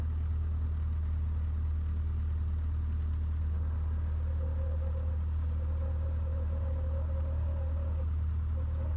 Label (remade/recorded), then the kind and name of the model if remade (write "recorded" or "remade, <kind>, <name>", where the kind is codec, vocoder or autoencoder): recorded